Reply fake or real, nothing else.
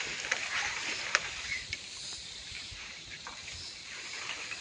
fake